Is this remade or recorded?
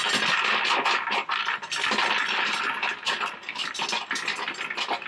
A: recorded